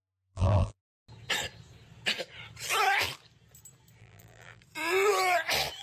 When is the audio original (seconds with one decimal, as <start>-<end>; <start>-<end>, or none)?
0.8-4.0; 4.6-5.8